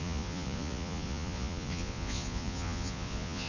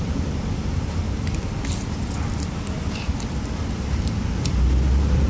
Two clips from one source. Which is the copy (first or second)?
first